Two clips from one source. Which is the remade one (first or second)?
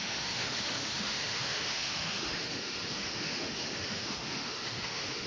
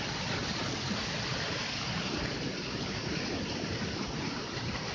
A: first